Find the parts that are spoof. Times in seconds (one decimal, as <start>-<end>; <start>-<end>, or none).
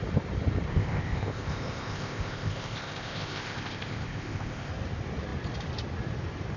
0.7-4.7